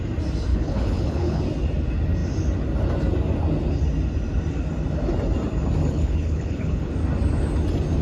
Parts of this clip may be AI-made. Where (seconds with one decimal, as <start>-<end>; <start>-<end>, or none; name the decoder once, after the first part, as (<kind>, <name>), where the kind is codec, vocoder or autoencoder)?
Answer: 0.5-1.4 (codec, HILCodec); 5.8-6.9